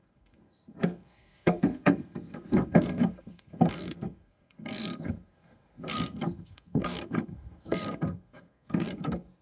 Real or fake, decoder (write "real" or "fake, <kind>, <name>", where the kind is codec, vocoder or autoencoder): fake, codec, SNAC